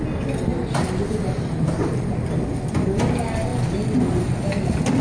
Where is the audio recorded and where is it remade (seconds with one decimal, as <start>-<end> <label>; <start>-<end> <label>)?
0.0-5.0 recorded